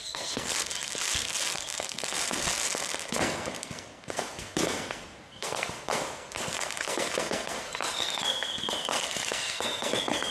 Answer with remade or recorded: remade